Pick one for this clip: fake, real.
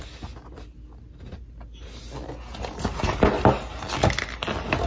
real